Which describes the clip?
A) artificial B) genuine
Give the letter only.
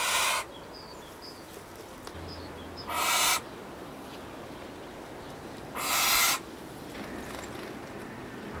B